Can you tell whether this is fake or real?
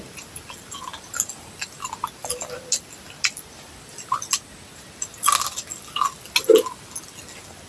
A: real